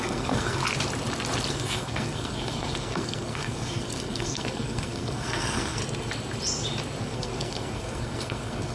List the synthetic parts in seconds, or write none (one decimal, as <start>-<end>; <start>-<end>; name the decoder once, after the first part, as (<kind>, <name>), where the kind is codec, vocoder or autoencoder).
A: 0.0-0.6 (codec, SNAC); 1.5-5.8; 7.0-8.7